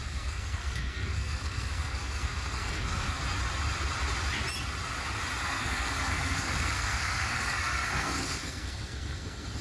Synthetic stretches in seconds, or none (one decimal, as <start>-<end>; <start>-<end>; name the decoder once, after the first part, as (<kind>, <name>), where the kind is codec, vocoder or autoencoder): 0.0-3.2 (codec, SNAC); 5.4-9.6